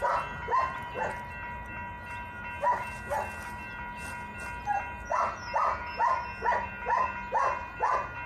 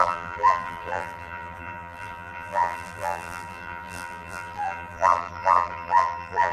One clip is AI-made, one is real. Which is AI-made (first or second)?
second